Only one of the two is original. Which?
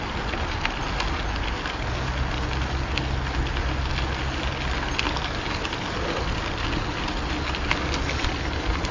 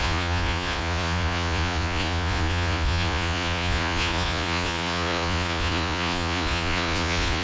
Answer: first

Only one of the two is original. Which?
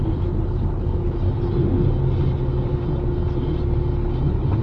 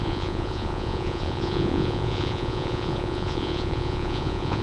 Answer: first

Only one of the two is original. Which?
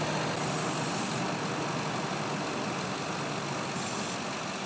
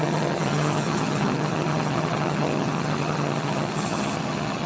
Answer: first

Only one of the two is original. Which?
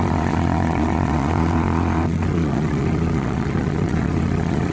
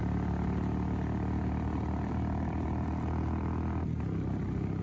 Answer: second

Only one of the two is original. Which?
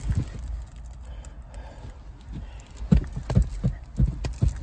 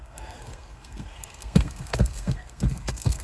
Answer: first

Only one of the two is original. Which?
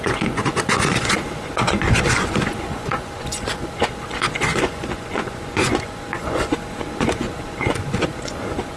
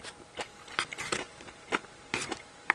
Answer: second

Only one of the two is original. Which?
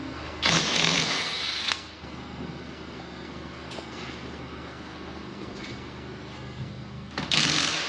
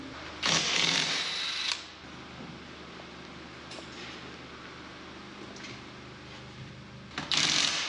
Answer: second